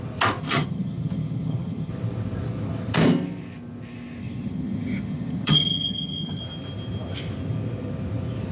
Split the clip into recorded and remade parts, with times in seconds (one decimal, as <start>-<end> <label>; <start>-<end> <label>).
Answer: 0.0-0.4 recorded; 0.4-1.9 remade; 1.9-4.2 recorded; 4.2-6.4 remade; 6.4-8.5 recorded